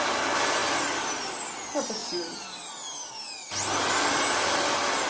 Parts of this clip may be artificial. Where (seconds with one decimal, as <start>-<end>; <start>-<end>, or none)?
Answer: none